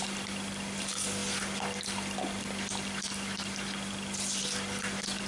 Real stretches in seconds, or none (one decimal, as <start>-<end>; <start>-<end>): 0.0-5.3